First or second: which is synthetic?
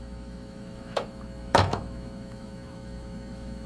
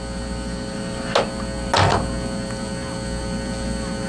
first